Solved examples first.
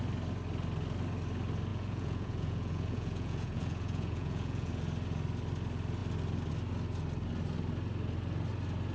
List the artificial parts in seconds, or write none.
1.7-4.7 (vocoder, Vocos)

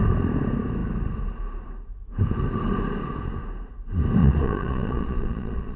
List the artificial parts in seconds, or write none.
4.2-5.8 (vocoder, Vocos)

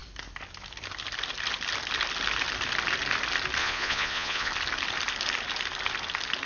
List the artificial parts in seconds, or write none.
3.6-4.5 (vocoder, Vocos)

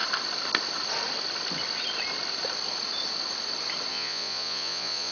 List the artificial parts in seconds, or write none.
3.9-5.1 (vocoder, Vocos)

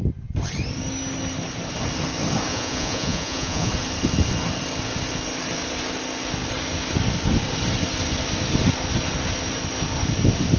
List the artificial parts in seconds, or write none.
2.5-3.7 (vocoder, Vocos)

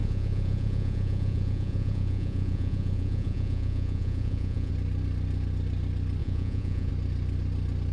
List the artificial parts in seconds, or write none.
0.0-4.7 (vocoder, Vocos); 6.2-6.9

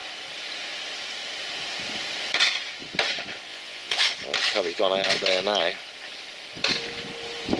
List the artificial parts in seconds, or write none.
3.5-4.1 (vocoder, Vocos)